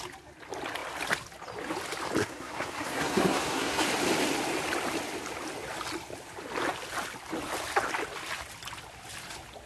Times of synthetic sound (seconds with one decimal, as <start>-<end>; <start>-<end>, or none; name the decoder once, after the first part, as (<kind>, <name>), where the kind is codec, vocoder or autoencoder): 2.2-3.8 (codec, SNAC)